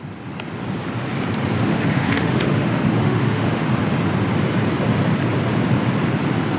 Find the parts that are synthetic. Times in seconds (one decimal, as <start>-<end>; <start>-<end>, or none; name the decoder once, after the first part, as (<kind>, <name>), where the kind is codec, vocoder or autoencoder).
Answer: 1.7-3.7 (autoencoder, DAC-VAE)